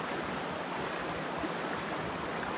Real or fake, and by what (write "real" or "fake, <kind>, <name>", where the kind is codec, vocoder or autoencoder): real